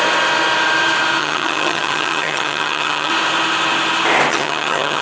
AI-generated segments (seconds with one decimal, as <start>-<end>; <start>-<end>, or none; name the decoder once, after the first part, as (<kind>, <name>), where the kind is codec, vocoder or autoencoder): 1.2-3.1 (vocoder, HiFi-GAN); 4.3-5.0